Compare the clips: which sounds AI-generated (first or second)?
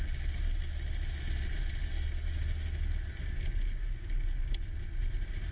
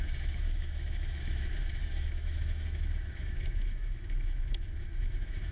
second